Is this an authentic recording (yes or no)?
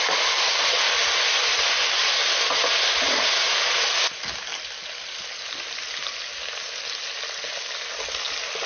yes